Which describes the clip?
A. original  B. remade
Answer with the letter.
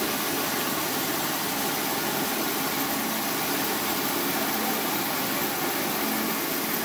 A